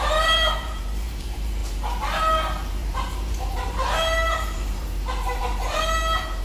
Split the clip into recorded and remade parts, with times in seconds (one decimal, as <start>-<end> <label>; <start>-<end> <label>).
0.0-6.4 remade